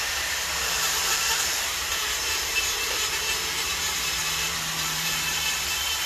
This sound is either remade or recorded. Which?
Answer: remade